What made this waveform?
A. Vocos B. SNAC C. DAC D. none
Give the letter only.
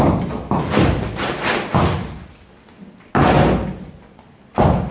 D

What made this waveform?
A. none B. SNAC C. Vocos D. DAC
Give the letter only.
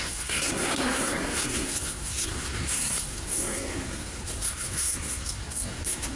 B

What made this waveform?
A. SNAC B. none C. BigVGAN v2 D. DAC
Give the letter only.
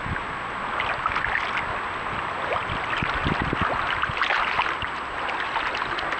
B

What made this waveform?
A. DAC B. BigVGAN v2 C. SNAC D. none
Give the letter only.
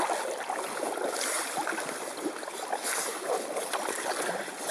D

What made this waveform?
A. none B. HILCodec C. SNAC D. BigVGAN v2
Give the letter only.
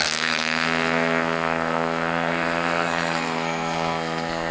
C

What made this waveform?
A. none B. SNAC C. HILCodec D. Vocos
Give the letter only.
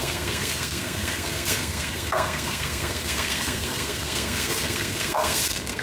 B